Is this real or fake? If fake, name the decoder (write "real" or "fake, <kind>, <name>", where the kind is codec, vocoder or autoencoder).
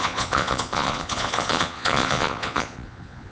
fake, vocoder, Vocos